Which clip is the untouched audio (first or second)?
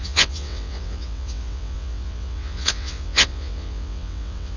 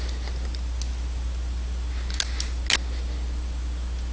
second